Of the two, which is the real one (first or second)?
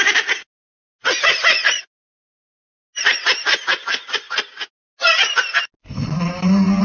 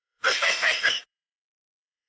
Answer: first